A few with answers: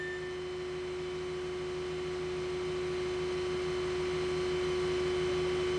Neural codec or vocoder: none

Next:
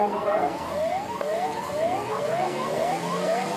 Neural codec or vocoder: codec, SNAC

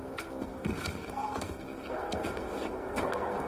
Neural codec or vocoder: codec, SNAC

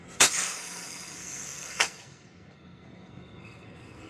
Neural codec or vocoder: codec, SNAC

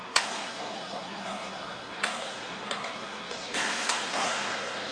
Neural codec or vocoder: codec, SNAC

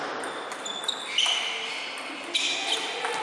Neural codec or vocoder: none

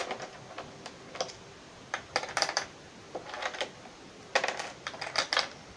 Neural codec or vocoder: none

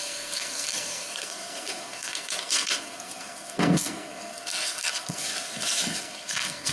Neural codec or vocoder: codec, SNAC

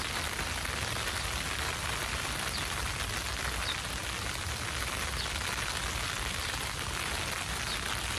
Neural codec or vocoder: none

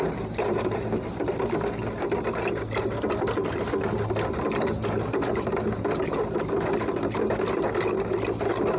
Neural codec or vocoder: none